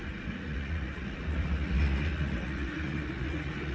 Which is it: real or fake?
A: fake